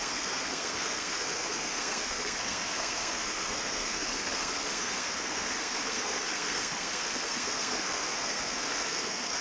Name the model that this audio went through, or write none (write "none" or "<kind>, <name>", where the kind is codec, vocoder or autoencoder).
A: codec, SNAC